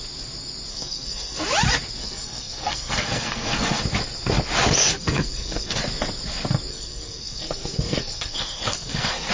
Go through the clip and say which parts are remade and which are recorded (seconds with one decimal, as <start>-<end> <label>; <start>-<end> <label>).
0.0-0.7 recorded; 0.7-1.4 remade; 1.4-2.0 recorded; 2.0-3.8 remade; 3.8-4.8 recorded; 4.8-5.8 remade; 5.8-6.7 recorded; 6.7-9.3 remade